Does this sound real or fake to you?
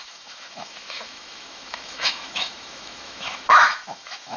fake